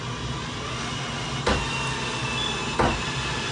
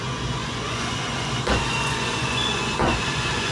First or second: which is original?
first